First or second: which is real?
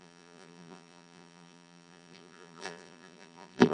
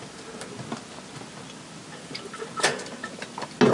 second